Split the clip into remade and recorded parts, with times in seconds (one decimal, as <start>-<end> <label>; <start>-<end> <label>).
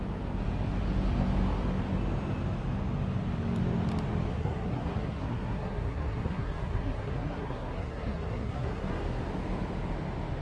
0.0-4.3 recorded; 4.3-8.9 remade; 8.9-10.4 recorded